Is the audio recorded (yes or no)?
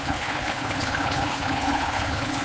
no